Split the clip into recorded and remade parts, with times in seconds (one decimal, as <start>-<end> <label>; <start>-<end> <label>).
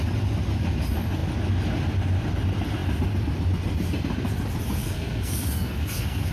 0.0-4.8 recorded; 4.8-6.3 remade